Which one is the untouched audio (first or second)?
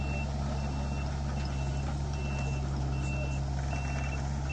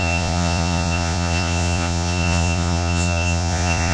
first